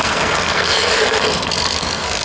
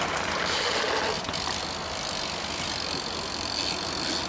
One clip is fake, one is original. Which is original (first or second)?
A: second